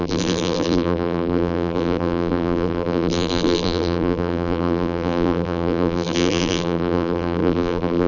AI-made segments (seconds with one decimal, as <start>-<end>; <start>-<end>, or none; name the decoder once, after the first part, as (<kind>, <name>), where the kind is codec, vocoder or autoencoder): 0.0-8.1 (vocoder, BigVGAN v2)